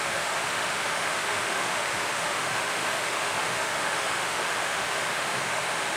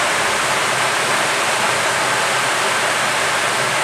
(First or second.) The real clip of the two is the second